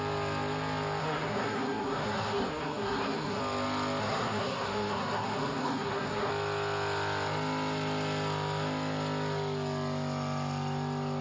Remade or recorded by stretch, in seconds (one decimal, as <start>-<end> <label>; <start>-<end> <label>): 0.0-1.0 recorded; 1.0-3.4 remade; 3.4-4.0 recorded; 4.0-6.3 remade; 6.3-11.2 recorded

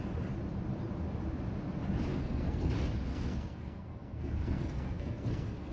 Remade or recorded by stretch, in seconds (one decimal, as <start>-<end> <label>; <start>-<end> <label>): 0.0-2.1 recorded; 2.1-2.7 remade; 2.7-3.1 recorded; 3.1-5.7 remade

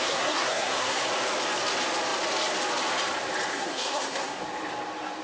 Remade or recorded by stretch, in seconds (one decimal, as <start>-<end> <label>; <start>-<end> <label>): 0.0-1.0 remade; 1.0-3.5 recorded; 3.5-4.4 remade; 4.4-5.2 recorded

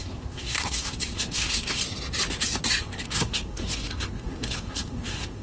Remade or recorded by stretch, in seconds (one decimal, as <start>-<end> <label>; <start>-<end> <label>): 0.0-1.8 remade; 1.8-2.8 recorded; 2.8-5.4 remade

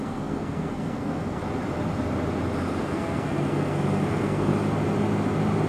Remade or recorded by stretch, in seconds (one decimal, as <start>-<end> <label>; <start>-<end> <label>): 0.0-1.4 remade; 1.4-2.8 recorded; 2.8-4.5 remade; 4.5-5.7 recorded